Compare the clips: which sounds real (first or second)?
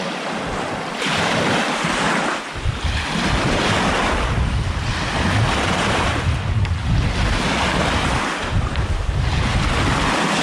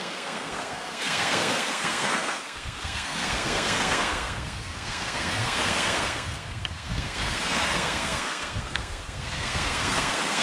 first